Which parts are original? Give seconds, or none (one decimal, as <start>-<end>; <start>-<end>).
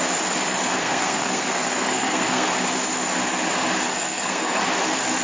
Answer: 0.0-0.8; 2.5-3.9; 4.6-5.2